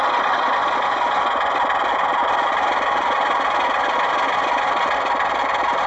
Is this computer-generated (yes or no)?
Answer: no